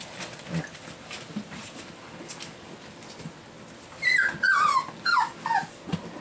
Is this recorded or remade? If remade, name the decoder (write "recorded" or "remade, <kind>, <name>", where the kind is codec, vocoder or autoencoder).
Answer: recorded